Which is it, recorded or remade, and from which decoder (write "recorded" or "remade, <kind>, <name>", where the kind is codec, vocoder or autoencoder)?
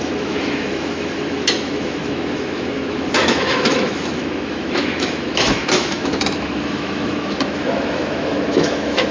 remade, autoencoder, DAC-VAE